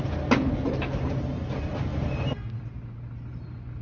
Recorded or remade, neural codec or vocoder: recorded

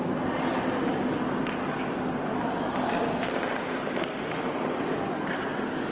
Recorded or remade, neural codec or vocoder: recorded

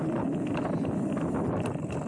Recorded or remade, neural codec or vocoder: recorded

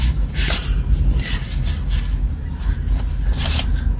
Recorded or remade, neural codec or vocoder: recorded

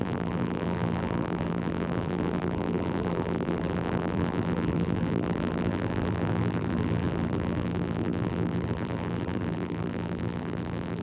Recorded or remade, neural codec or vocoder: remade, vocoder, BigVGAN v2